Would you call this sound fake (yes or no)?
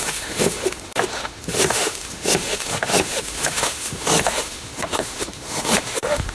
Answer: yes